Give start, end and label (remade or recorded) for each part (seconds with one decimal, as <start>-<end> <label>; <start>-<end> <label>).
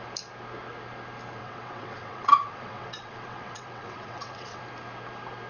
0.0-1.4 recorded; 1.4-4.6 remade; 4.6-5.5 recorded